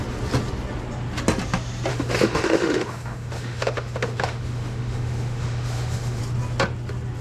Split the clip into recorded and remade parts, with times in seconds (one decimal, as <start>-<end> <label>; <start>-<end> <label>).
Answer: 0.0-1.9 recorded; 1.9-6.2 remade; 6.2-7.2 recorded

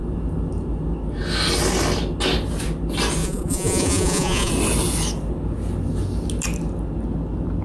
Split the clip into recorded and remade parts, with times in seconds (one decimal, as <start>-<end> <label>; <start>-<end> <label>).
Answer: 0.0-3.2 recorded; 3.2-4.5 remade; 4.5-7.6 recorded

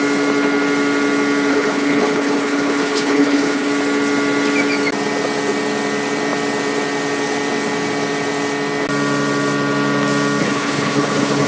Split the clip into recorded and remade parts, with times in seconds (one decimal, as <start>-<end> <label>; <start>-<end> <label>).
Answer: 0.0-1.5 recorded; 1.5-3.7 remade; 3.7-10.4 recorded; 10.4-11.5 remade

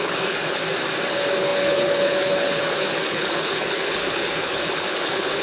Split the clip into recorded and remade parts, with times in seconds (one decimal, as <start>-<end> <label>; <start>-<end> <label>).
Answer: 0.0-0.6 remade; 0.6-1.1 recorded; 1.1-5.4 remade

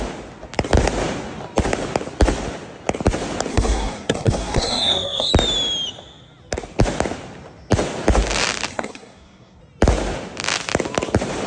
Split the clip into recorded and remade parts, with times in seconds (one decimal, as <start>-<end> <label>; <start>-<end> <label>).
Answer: 0.0-3.5 recorded; 3.5-5.3 remade; 5.3-8.7 recorded; 8.7-9.6 remade; 9.6-11.5 recorded

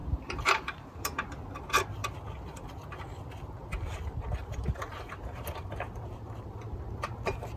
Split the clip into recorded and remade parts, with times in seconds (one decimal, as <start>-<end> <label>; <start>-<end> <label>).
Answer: 0.0-1.8 remade; 1.8-4.4 recorded; 4.4-5.4 remade; 5.4-7.6 recorded

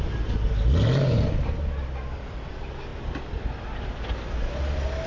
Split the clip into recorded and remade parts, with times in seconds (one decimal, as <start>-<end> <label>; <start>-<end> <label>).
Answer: 0.0-5.1 recorded